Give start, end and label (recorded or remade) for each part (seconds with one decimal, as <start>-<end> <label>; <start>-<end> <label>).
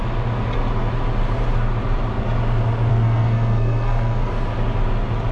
0.0-2.9 recorded; 2.9-4.3 remade; 4.3-5.3 recorded